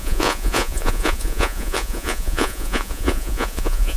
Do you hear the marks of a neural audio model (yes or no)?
yes